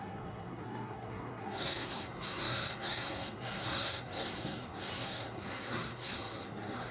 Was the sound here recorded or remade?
remade